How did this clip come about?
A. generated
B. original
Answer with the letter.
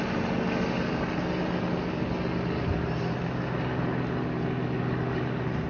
B